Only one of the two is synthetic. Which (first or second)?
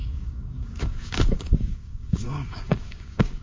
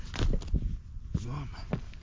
first